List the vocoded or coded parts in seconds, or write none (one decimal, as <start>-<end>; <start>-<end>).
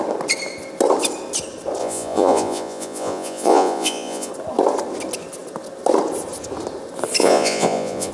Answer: 1.8-4.3; 7.2-8.1